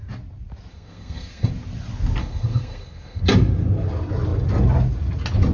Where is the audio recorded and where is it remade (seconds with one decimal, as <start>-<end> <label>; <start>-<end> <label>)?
0.0-0.7 recorded; 0.7-1.5 remade; 1.5-2.2 recorded; 2.2-3.2 remade; 3.2-5.5 recorded